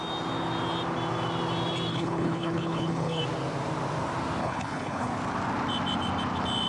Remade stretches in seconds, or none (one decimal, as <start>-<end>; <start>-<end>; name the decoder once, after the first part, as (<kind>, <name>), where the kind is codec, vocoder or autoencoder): 1.9-3.2 (codec, HILCodec); 4.4-5.1